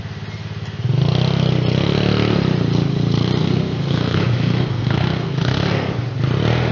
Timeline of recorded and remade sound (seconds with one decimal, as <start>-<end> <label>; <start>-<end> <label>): 0.0-3.4 recorded; 3.4-5.9 remade; 5.9-6.7 recorded